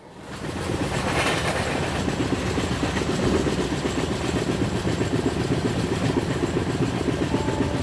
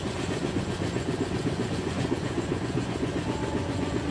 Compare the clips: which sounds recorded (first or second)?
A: first